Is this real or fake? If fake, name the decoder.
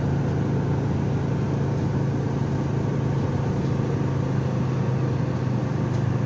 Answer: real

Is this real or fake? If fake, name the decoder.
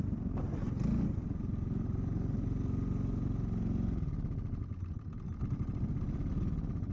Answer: real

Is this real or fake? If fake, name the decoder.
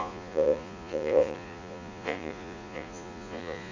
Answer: fake, vocoder, Vocos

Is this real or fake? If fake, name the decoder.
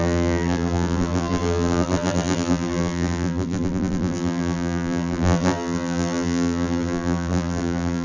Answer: fake, vocoder, BigVGAN v2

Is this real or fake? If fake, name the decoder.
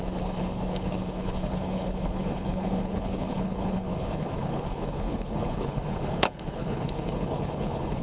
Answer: fake, codec, HILCodec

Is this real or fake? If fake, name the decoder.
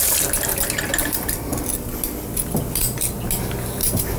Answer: real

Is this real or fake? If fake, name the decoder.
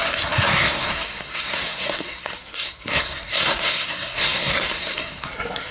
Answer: fake, codec, SNAC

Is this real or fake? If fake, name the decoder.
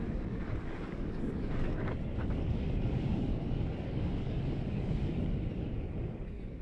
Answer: fake, codec, DAC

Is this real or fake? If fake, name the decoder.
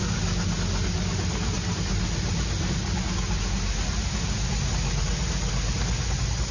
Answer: real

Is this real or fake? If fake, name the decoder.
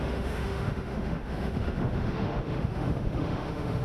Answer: fake, autoencoder, DAC-VAE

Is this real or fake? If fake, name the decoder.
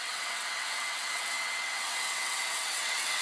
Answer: fake, vocoder, WaveNeXt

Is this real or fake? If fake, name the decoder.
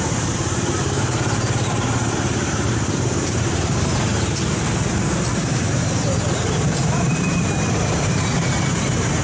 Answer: fake, vocoder, BigVGAN v2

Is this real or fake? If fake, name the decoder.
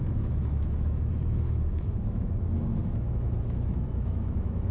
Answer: fake, autoencoder, DAC-VAE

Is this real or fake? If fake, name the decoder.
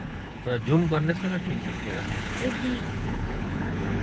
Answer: fake, codec, HILCodec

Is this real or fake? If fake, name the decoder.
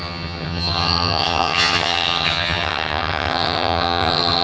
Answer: fake, vocoder, HiFi-GAN